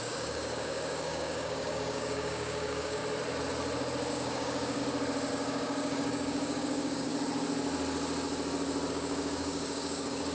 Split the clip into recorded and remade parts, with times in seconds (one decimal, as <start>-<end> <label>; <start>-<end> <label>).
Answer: 0.0-3.0 remade; 3.0-4.1 recorded; 4.1-4.8 remade; 4.8-5.3 recorded; 5.3-7.1 remade; 7.1-8.9 recorded; 8.9-10.3 remade